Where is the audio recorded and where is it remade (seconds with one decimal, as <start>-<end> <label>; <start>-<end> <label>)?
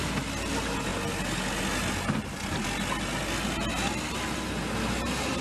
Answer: 0.0-5.4 recorded